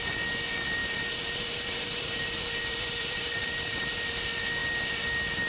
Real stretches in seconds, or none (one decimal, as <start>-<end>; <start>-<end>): 0.0-0.8; 4.1-5.5